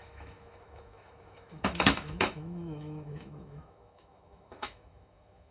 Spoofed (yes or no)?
yes